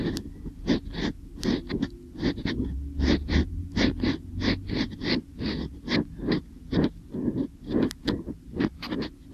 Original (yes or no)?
yes